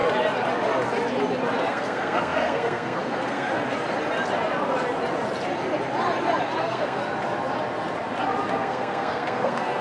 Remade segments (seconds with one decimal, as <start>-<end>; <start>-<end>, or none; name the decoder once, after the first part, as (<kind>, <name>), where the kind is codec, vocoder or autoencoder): 1.7-3.5 (codec, SNAC); 6.6-7.0; 8.5-9.8